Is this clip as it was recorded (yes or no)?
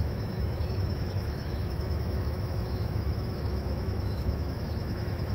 no